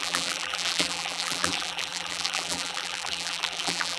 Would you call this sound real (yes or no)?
no